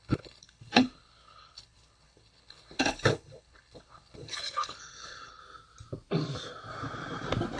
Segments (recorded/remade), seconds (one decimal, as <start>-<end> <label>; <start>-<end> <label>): 0.0-5.4 remade; 5.4-7.6 recorded